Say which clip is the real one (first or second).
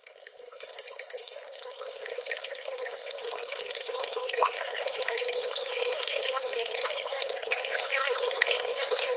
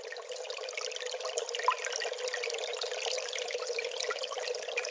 second